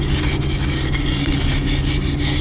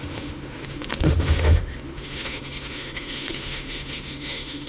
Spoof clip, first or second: second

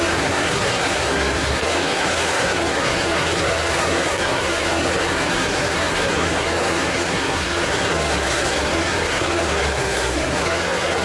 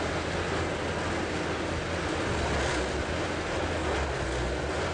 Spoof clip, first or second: first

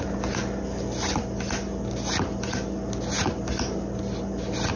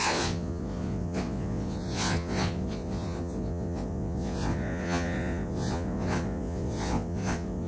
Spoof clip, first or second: second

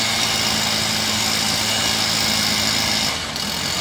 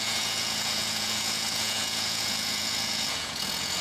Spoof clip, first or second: second